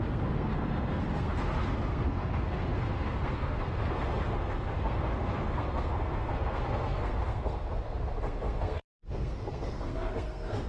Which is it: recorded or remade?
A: remade